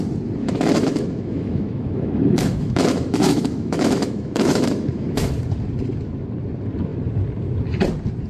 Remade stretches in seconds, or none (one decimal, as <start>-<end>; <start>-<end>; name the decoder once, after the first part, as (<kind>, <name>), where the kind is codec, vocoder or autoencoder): 0.4-5.4 (autoencoder, DAC-VAE)